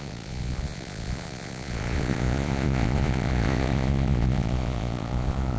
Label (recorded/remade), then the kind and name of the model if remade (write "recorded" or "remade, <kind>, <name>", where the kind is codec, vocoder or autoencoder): remade, vocoder, Vocos